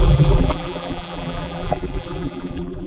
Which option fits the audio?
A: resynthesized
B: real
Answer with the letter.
A